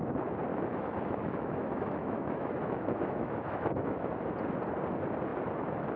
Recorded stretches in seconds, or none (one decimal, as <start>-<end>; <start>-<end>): 0.0-0.5; 4.1-6.0

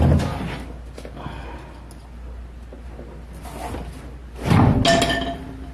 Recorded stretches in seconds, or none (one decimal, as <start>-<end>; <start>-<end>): 0.0-5.7

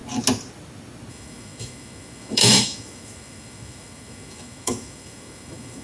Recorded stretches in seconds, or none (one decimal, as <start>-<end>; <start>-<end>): 0.0-1.1

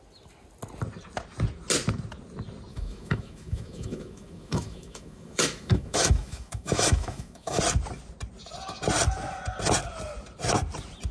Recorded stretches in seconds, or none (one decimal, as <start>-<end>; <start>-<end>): 0.0-2.7; 7.6-11.1

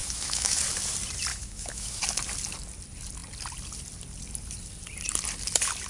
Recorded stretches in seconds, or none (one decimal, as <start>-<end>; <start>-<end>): 0.6-1.3; 2.0-5.9

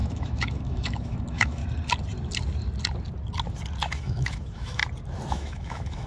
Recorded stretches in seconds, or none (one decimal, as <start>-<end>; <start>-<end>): 1.6-4.0; 4.8-5.3

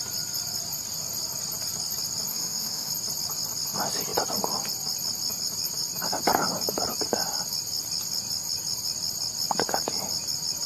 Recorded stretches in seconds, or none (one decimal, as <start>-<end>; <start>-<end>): 0.0-2.3; 2.9-10.7

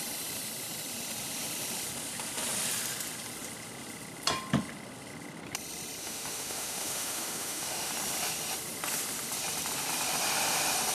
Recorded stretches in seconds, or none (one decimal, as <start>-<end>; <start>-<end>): 0.0-6.0; 7.9-10.9